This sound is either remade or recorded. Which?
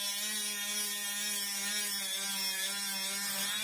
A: recorded